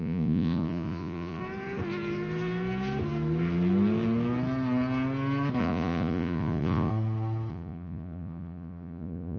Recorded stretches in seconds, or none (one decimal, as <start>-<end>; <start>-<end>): 1.4-5.6; 6.9-7.5